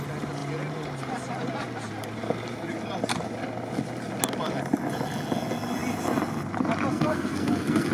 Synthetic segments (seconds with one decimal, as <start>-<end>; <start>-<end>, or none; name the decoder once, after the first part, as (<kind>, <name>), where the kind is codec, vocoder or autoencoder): 6.9-7.9 (codec, SNAC)